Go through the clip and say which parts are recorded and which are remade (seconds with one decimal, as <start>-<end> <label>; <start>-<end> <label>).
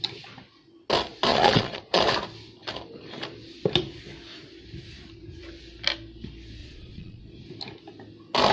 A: 0.0-1.3 recorded; 1.3-2.0 remade; 2.0-6.6 recorded; 6.6-7.2 remade; 7.2-8.5 recorded